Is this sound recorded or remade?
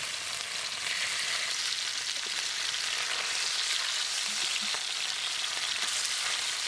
recorded